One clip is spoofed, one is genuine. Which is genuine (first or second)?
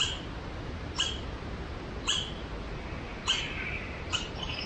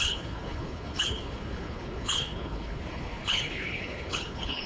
first